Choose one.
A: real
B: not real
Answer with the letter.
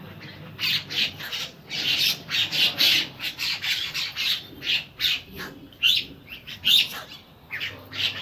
B